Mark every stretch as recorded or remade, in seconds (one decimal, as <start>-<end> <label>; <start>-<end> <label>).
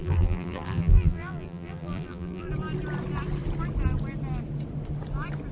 0.0-2.5 remade; 2.5-5.5 recorded